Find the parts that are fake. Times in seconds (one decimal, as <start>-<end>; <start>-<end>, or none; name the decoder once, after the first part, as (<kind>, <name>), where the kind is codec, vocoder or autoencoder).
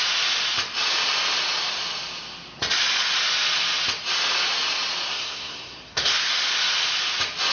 5.1-6.3 (codec, SNAC)